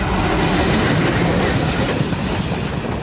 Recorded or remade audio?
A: recorded